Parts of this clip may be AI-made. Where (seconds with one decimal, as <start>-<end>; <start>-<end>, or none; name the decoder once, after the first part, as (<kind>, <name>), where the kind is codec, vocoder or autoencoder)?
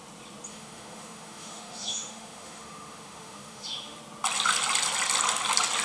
0.5-4.0 (autoencoder, DAC-VAE)